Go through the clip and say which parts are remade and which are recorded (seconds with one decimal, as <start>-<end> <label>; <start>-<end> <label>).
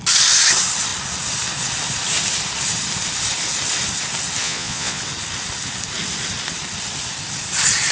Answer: 0.0-4.4 recorded; 4.4-5.0 remade; 5.0-7.9 recorded